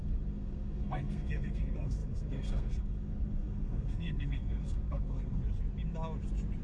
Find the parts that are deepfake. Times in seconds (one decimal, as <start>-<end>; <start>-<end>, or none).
0.0-5.4